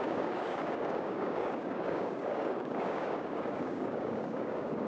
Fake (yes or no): yes